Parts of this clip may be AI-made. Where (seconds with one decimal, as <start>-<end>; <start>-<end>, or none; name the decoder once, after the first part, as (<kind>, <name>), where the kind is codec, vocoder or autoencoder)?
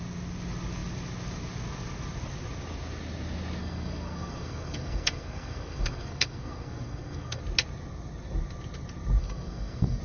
3.6-7.4 (codec, SNAC); 9.2-10.0